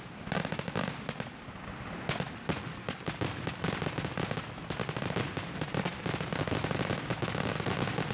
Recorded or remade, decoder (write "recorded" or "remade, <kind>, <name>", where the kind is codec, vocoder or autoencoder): recorded